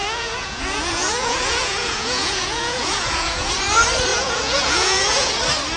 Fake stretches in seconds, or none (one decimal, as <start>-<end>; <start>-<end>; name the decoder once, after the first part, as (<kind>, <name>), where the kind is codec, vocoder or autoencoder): 0.0-3.5 (vocoder, Vocos); 4.1-5.3